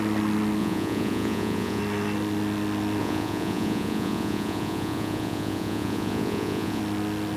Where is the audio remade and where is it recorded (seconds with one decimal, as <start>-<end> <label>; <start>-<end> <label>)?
0.0-0.6 recorded; 0.6-1.8 remade; 1.8-3.0 recorded; 3.0-6.8 remade; 6.8-7.4 recorded